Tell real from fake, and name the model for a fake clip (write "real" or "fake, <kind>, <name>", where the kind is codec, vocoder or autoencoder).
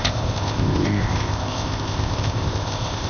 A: fake, codec, ZipCodec